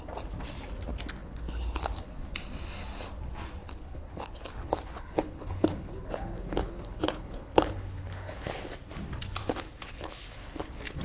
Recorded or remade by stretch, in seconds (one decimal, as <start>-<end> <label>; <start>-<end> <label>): 0.0-1.2 recorded; 1.2-2.3 remade; 2.3-3.6 recorded; 3.6-8.7 remade; 8.7-9.4 recorded; 9.4-11.0 remade